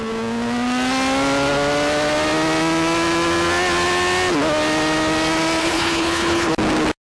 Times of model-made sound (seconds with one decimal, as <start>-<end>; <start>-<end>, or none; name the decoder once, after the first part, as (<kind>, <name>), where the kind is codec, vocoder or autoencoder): 5.6-6.5 (codec, HILCodec)